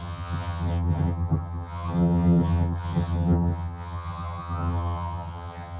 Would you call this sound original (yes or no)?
no